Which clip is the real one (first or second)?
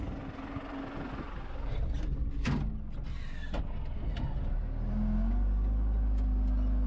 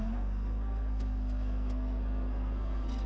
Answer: first